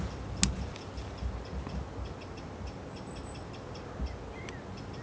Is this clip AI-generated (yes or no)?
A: no